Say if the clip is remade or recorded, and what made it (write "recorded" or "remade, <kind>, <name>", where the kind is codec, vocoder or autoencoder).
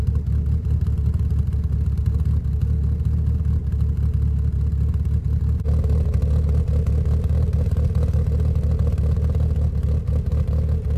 recorded